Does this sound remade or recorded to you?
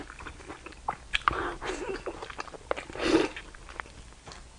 recorded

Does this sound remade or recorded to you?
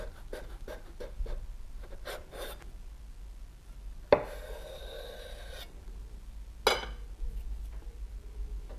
recorded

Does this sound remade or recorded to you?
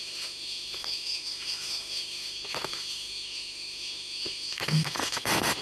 remade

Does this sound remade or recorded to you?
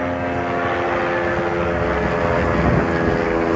recorded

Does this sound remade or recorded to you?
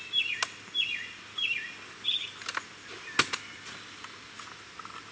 recorded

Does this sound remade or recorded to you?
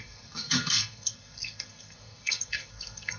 remade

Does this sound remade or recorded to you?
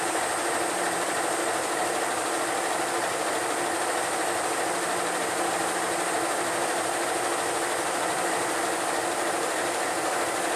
recorded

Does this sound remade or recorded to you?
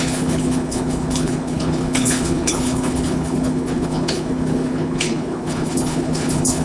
remade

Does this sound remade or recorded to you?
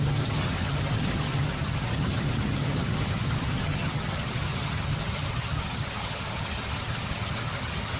remade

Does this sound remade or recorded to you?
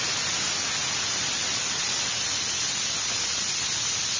recorded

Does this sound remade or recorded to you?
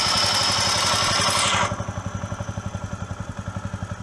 recorded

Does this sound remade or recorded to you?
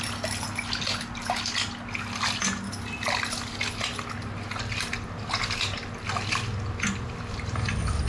recorded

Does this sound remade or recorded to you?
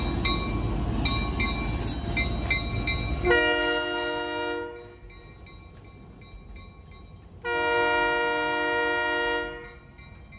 recorded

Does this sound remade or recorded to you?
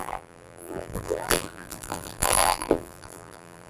remade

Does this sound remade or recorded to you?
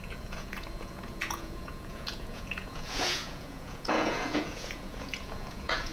remade